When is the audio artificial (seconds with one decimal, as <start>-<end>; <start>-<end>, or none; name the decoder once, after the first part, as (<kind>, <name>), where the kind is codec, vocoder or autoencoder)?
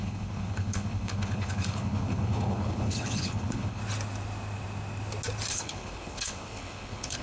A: 0.0-3.8 (codec, HILCodec); 5.5-7.2